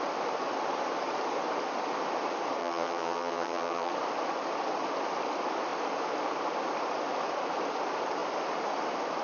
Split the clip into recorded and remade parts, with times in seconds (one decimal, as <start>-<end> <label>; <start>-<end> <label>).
0.0-2.6 recorded; 2.6-3.9 remade; 3.9-9.2 recorded